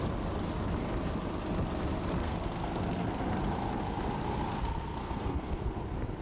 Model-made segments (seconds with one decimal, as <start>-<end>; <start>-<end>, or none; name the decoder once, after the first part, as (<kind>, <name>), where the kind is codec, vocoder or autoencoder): 2.2-3.2 (codec, SNAC); 4.5-5.8